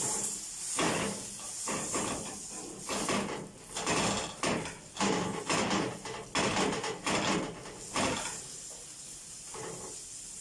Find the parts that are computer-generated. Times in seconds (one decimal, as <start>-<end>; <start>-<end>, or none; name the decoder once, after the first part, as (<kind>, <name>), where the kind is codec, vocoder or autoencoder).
none